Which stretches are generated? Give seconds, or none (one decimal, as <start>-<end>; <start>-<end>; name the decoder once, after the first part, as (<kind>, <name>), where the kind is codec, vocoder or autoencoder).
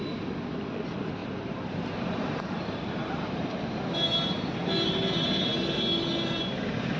1.2-3.4 (vocoder, BigVGAN v2)